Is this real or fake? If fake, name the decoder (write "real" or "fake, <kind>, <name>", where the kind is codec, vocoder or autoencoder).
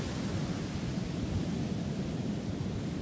real